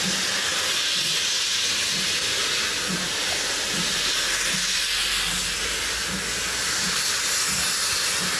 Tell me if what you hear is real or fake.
real